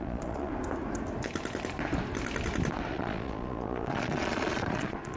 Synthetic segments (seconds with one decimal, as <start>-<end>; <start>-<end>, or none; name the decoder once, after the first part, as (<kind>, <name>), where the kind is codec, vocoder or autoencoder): 0.0-0.5 (vocoder, Vocos); 2.9-5.2